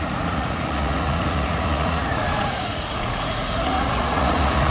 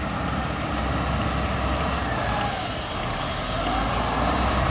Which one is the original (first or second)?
second